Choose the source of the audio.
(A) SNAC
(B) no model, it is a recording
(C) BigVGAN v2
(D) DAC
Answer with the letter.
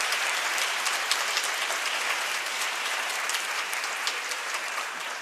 C